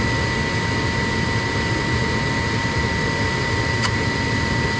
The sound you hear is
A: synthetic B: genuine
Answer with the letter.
B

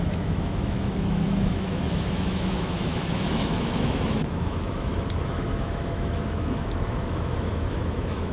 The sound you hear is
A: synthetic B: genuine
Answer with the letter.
A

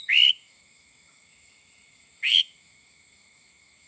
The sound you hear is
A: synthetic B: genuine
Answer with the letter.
A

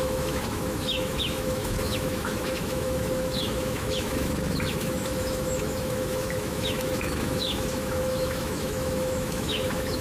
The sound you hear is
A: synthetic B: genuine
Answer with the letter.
A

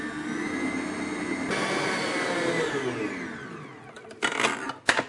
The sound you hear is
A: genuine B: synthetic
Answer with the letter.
A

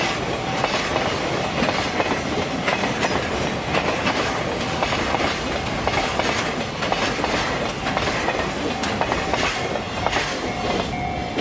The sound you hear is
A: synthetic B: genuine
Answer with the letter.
B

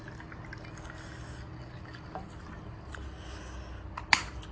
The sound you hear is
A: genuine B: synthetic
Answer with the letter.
A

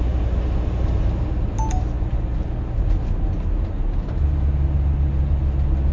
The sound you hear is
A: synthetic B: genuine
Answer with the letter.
B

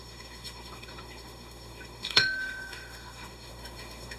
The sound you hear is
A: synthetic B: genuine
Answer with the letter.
A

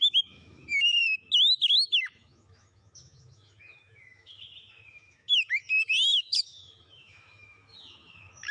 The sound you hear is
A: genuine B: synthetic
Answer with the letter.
B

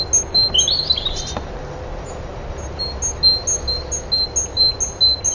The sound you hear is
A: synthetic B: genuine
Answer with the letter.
B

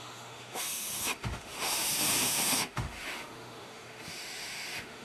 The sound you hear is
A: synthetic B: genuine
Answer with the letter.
A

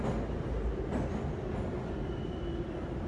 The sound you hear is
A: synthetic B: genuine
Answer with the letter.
B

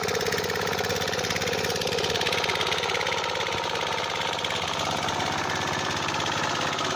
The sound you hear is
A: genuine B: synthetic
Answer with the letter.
A